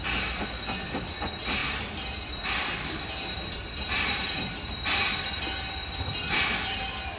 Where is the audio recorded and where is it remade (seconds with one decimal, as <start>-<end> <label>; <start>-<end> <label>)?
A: 0.0-1.6 recorded; 1.6-4.7 remade; 4.7-7.2 recorded